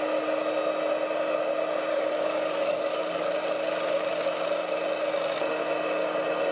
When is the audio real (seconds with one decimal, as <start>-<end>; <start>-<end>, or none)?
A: 0.0-1.9; 3.3-6.5